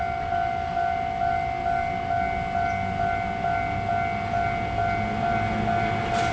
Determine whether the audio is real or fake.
real